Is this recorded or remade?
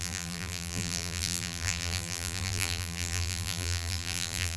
remade